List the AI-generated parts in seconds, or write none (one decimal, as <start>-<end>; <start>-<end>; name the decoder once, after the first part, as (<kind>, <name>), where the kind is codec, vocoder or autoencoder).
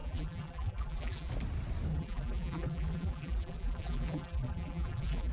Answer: 0.0-1.3 (vocoder, BigVGAN v2); 1.9-5.3